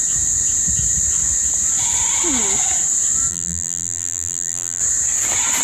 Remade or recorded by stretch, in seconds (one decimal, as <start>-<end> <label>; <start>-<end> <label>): 0.0-3.3 recorded; 3.3-4.8 remade; 4.8-5.6 recorded

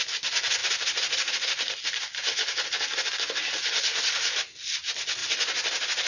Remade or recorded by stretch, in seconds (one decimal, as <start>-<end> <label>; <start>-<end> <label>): 0.0-3.9 recorded; 3.9-4.5 remade; 4.5-5.2 recorded; 5.2-6.1 remade